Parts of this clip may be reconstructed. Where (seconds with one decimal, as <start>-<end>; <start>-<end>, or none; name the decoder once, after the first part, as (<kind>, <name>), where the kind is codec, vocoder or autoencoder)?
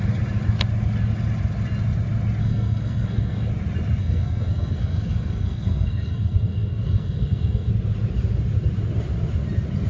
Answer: 2.4-3.5 (codec, SNAC); 4.0-7.7